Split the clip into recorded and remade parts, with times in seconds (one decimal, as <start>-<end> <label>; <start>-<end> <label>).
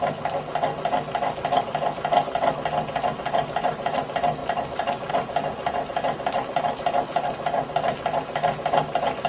0.0-9.3 recorded